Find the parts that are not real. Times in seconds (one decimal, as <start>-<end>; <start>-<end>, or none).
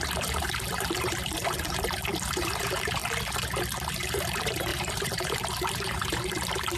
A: 0.0-3.0; 3.9-6.8